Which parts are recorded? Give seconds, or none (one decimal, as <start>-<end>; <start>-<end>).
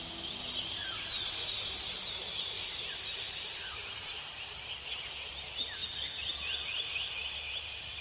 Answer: 0.0-0.8; 4.6-5.8; 7.1-8.0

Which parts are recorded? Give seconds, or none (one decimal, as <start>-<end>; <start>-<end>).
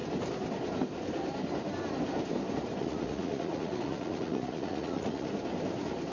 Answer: 0.0-2.8; 5.3-6.1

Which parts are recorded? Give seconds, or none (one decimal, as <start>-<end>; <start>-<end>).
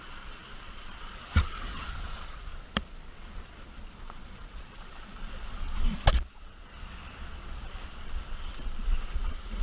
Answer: 2.5-4.0; 5.6-9.0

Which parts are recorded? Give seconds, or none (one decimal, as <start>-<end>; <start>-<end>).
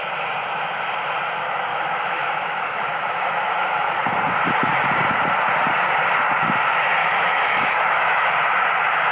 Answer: 0.0-1.7; 4.0-7.0; 8.3-9.1